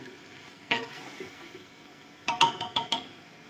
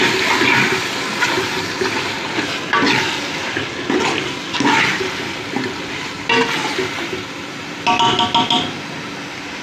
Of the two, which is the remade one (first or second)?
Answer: first